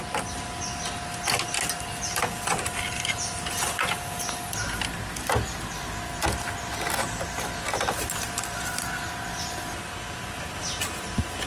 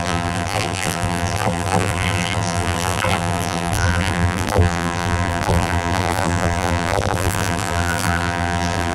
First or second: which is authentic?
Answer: first